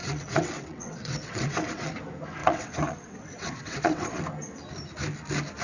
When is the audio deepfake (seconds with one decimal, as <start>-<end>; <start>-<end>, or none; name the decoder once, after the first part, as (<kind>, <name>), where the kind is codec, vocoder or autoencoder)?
0.0-1.9 (vocoder, WaveNeXt); 2.4-4.2